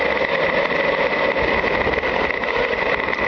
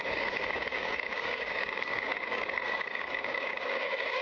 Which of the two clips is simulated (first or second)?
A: second